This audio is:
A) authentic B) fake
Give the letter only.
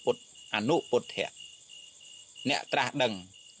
A